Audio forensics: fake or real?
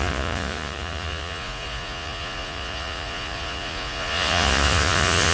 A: fake